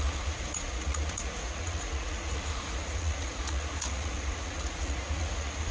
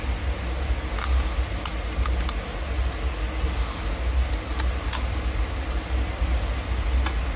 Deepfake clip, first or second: first